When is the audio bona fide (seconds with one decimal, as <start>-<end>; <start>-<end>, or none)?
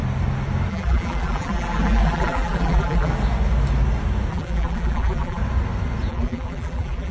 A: 0.0-0.7; 3.1-4.3; 5.4-6.1